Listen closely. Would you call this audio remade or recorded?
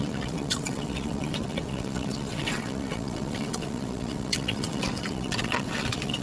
remade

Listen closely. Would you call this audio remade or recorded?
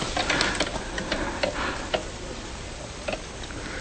recorded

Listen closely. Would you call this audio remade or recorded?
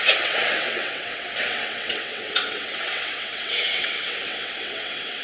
remade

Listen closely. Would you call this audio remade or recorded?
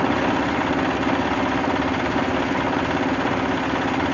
recorded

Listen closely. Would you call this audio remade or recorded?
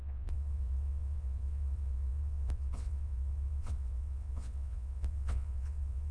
remade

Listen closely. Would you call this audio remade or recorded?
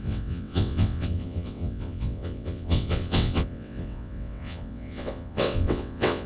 remade